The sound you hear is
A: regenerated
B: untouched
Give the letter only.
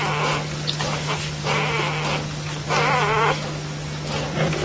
B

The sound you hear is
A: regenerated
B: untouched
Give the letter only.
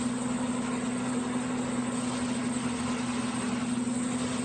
B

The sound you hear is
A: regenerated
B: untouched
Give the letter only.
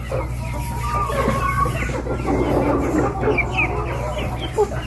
B